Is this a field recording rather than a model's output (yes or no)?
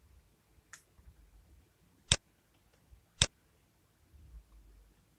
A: yes